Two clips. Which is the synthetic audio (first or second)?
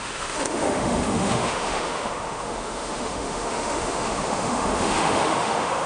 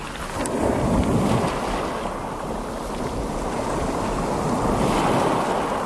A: first